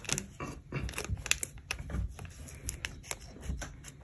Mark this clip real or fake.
real